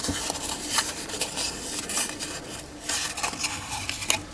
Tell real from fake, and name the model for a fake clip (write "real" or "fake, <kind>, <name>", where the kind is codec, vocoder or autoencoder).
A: real